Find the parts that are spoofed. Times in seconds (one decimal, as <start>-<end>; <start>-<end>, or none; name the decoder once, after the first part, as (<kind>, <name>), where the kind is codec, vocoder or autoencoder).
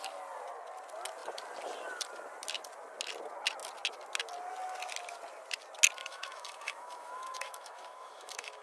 6.0-8.6 (autoencoder, DAC-VAE)